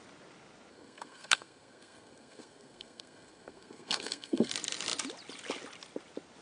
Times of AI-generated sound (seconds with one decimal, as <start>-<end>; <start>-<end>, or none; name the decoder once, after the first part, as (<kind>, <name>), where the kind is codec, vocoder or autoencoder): 0.7-4.5 (codec, SNAC)